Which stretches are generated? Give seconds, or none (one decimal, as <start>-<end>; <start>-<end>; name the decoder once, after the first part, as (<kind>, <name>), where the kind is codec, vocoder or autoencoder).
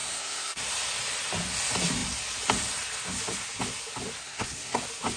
0.0-0.6 (codec, SNAC); 4.2-4.8